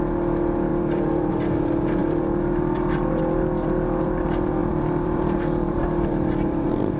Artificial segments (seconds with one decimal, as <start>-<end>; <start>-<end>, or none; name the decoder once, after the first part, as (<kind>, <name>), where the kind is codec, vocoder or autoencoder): 0.7-1.3 (vocoder, BigVGAN v2); 2.0-3.2; 4.6-7.0